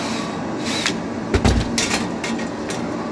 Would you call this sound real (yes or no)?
yes